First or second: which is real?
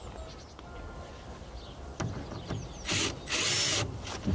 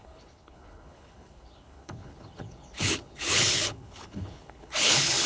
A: first